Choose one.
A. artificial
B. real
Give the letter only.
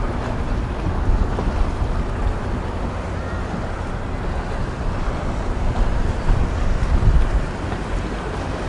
B